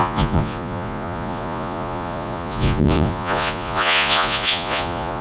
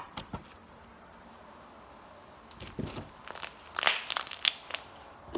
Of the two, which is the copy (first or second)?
first